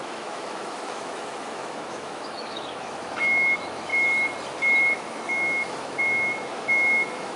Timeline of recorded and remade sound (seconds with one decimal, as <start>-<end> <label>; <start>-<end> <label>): 0.0-3.9 remade; 3.9-4.9 recorded; 4.9-7.4 remade